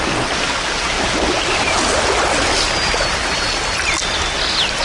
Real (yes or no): yes